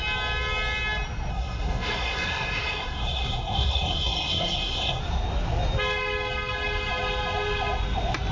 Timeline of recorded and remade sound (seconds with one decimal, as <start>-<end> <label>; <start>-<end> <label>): 0.0-1.3 recorded; 1.3-5.0 remade; 5.0-8.3 recorded